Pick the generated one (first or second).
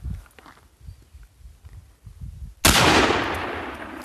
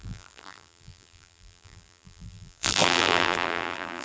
second